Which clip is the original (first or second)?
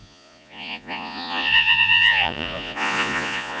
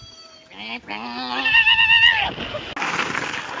second